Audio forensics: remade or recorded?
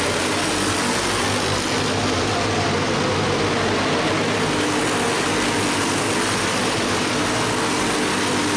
recorded